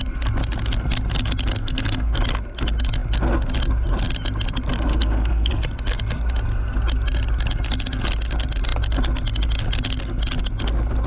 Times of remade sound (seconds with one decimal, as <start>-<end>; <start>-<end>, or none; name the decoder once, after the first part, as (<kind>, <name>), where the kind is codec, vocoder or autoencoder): 1.6-2.2 (codec, SNAC); 4.9-5.5